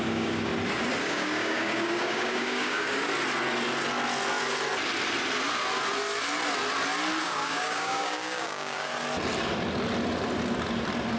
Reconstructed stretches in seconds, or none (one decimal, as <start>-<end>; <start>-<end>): 0.0-0.5; 1.0-3.1; 7.2-8.9